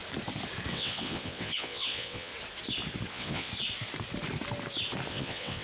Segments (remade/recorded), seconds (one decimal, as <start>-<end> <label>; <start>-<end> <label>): 0.0-0.7 recorded; 0.7-2.3 remade; 2.3-3.1 recorded; 3.1-3.5 remade; 3.5-5.1 recorded; 5.1-5.6 remade